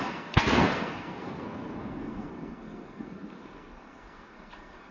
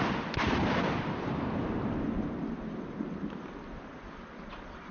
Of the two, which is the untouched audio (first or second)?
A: second